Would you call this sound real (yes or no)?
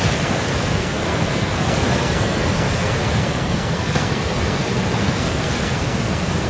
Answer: no